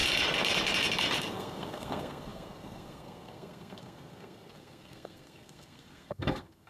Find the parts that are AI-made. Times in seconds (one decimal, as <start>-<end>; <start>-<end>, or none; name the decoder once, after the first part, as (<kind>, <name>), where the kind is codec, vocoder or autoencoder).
1.2-6.7 (codec, SNAC)

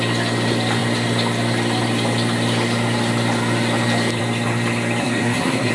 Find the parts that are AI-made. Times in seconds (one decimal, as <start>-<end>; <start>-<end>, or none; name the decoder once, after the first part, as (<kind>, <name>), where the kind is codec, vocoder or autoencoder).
5.0-5.7 (codec, SNAC)

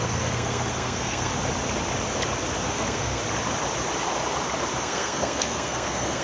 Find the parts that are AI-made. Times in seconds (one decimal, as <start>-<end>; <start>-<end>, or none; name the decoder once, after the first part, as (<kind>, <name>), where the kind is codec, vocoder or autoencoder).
0.0-1.3 (codec, SNAC); 2.7-3.2; 4.8-6.2